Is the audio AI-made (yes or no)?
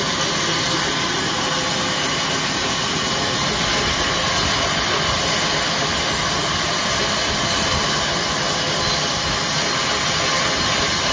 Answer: no